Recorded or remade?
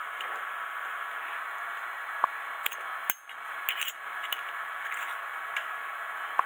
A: recorded